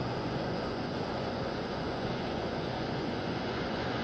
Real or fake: fake